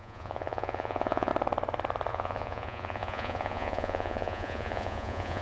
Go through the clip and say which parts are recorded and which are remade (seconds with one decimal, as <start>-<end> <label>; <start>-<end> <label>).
0.0-1.3 remade; 1.3-2.1 recorded; 2.1-5.4 remade